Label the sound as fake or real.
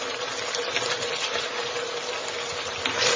real